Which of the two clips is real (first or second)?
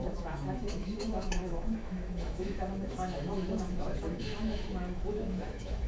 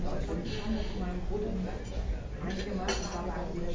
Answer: second